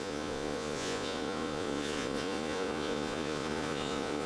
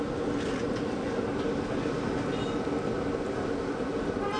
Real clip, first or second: second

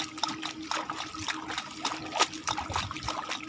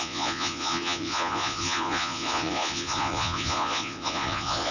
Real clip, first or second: first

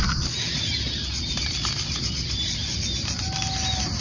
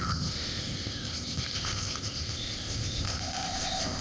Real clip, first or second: first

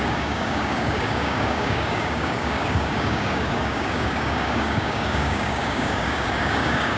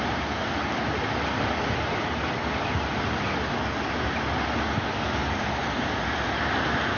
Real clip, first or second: second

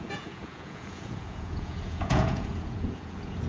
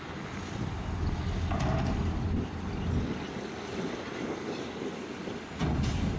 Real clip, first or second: second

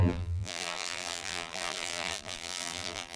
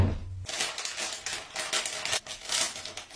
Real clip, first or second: second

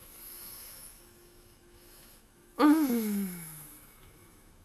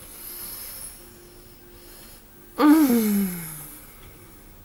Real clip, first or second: second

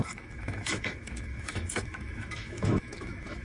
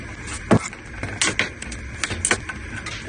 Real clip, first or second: second